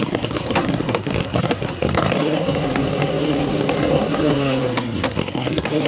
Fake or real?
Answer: fake